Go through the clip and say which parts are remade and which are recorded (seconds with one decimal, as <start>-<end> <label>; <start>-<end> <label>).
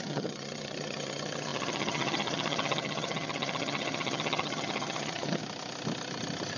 0.0-5.4 remade; 5.4-6.6 recorded